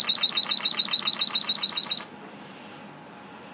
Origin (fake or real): real